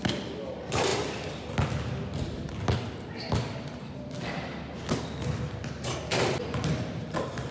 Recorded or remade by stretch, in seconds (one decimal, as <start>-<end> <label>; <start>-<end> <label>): 0.0-7.5 recorded

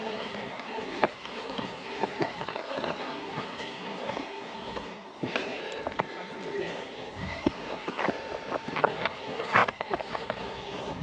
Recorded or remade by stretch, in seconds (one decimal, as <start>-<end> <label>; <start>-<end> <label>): 0.0-5.6 remade; 5.6-6.6 recorded; 6.6-8.0 remade; 8.0-8.8 recorded; 8.8-11.0 remade

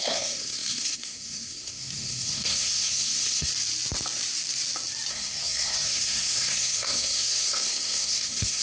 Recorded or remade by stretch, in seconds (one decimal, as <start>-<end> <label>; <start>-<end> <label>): 0.0-3.5 remade; 3.5-5.1 recorded; 5.1-8.6 remade

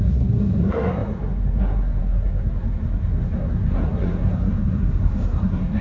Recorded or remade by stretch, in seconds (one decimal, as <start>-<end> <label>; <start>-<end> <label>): 0.0-5.8 remade

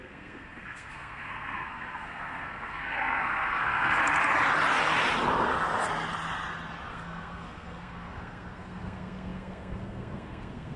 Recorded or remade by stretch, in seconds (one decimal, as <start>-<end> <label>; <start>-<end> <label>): 0.0-4.0 remade; 4.0-6.9 recorded; 6.9-10.8 remade

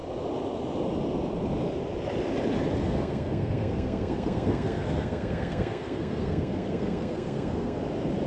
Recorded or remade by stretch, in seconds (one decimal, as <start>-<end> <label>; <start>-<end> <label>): 0.0-2.8 recorded; 2.8-7.8 remade; 7.8-8.3 recorded

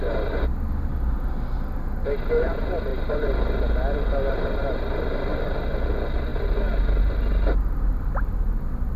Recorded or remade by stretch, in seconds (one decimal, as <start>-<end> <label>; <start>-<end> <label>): 0.0-9.0 recorded